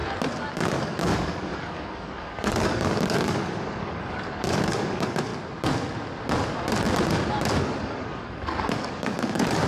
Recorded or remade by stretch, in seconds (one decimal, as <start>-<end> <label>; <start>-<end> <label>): 0.0-0.5 recorded; 0.5-5.3 remade; 5.3-7.6 recorded; 7.6-9.7 remade